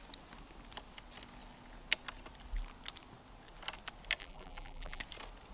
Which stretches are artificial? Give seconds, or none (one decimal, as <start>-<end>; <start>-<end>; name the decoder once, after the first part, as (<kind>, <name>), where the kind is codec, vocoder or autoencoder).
4.2-5.0 (vocoder, BigVGAN v2)